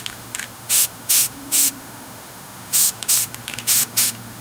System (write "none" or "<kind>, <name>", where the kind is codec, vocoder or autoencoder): autoencoder, DAC-VAE